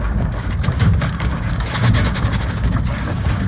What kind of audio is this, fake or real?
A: fake